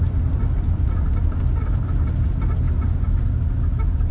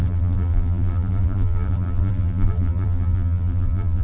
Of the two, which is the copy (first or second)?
second